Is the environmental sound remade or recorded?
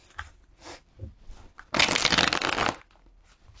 recorded